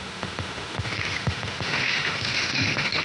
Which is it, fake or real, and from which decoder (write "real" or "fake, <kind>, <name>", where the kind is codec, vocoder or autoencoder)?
fake, autoencoder, DAC-VAE